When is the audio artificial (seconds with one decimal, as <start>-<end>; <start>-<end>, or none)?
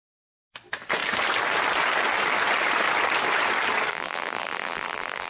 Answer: 3.9-5.3